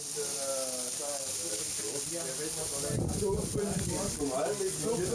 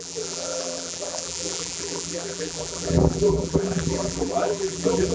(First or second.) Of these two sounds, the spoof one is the second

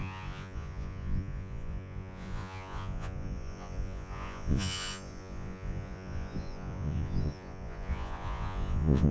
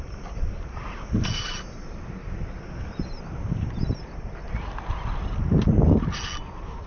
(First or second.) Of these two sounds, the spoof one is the first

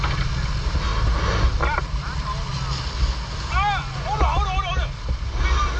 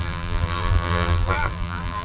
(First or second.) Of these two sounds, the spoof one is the second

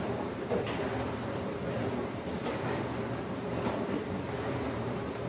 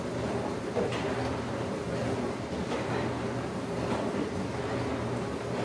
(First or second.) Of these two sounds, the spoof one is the first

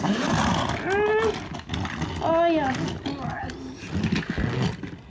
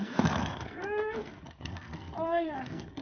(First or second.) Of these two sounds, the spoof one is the second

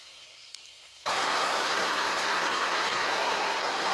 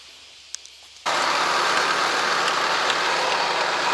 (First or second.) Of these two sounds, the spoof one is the first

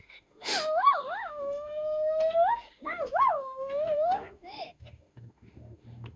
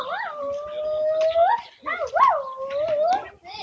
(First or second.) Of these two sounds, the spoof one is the first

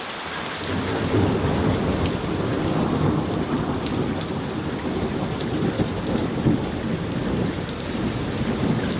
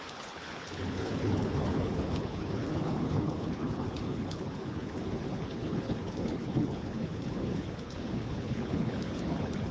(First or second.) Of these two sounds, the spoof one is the second